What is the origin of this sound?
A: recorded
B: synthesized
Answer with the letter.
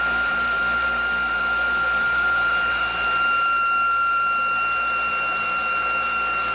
B